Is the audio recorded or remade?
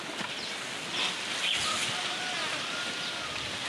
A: recorded